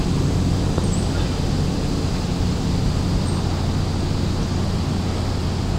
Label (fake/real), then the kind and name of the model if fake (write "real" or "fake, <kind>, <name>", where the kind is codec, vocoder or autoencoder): real